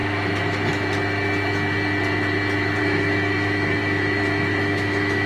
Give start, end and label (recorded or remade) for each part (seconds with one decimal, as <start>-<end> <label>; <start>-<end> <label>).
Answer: 0.0-2.8 recorded; 2.8-5.3 remade